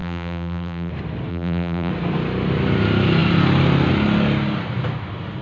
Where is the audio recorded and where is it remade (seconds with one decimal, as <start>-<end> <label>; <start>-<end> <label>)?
0.0-0.9 remade; 0.9-1.3 recorded; 1.3-1.9 remade; 1.9-5.4 recorded

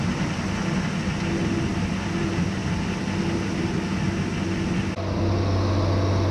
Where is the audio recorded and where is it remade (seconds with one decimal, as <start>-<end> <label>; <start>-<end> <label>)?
0.0-6.3 recorded

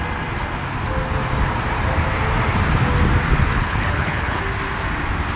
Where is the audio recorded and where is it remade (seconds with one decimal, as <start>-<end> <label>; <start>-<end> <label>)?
0.0-3.5 recorded; 3.5-4.4 remade; 4.4-5.4 recorded

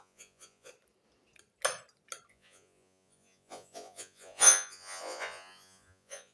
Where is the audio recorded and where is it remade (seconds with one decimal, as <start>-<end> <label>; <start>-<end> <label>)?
0.0-0.7 remade; 0.7-2.3 recorded; 2.3-6.3 remade

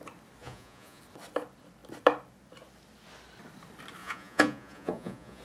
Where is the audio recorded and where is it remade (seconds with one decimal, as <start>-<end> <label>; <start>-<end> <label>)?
0.0-0.4 recorded; 0.4-1.0 remade; 1.0-4.0 recorded; 4.0-5.4 remade

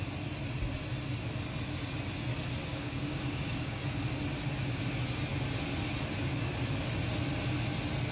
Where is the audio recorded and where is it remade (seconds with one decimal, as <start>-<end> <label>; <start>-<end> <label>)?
0.0-2.7 recorded; 2.7-3.8 remade; 3.8-8.1 recorded

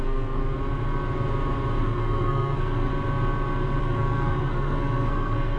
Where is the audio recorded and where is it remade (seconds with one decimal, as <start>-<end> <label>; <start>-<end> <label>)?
0.0-0.4 remade; 0.4-1.8 recorded; 1.8-2.9 remade; 2.9-3.8 recorded; 3.8-5.6 remade

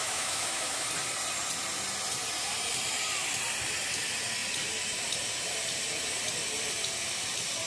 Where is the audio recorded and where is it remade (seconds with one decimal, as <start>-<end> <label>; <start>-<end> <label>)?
0.0-0.9 remade; 0.9-7.7 recorded